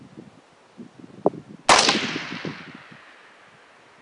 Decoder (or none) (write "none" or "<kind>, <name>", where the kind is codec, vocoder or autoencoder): none